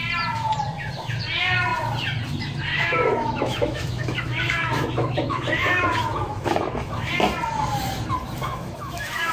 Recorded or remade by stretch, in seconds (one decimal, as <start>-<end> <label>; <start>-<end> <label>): 0.0-2.7 recorded; 2.7-7.1 remade; 7.1-8.4 recorded; 8.4-9.3 remade